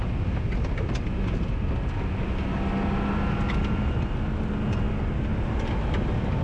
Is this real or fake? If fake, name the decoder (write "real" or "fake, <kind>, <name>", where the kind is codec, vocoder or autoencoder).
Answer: real